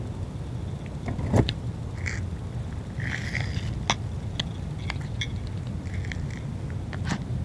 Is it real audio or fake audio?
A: real